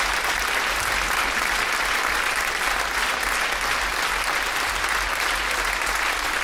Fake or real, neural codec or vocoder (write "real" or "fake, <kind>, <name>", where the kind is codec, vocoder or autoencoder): real